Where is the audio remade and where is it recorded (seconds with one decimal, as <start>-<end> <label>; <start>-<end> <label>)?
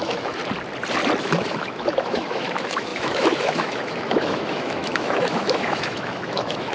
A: 0.0-0.4 remade; 0.4-1.2 recorded; 1.2-6.7 remade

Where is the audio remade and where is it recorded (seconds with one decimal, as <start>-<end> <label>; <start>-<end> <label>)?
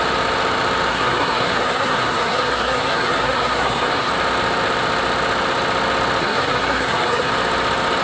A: 0.0-0.9 recorded; 0.9-4.1 remade; 4.1-6.2 recorded; 6.2-7.3 remade; 7.3-8.0 recorded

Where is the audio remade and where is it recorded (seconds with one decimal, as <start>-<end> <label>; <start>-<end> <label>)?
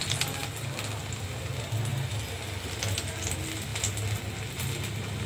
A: 0.0-5.3 recorded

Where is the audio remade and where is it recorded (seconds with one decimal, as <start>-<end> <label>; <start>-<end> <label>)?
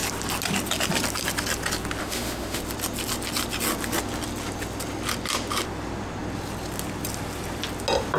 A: 0.0-2.0 recorded; 2.0-2.6 remade; 2.6-8.2 recorded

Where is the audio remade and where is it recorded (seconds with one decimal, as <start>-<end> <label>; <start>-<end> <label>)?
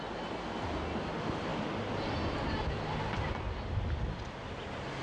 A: 0.0-5.0 recorded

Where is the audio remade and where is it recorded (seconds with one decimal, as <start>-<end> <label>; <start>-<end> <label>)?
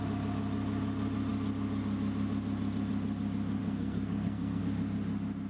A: 0.0-3.6 recorded; 3.6-4.6 remade; 4.6-5.5 recorded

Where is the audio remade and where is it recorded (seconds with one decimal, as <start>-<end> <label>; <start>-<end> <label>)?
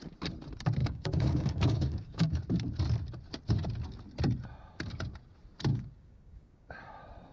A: 0.0-0.8 recorded; 0.8-2.4 remade; 2.4-5.7 recorded; 5.7-6.7 remade; 6.7-7.3 recorded